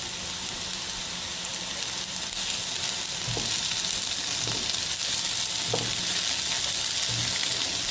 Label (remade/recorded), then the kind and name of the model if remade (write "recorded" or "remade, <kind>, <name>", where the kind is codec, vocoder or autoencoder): recorded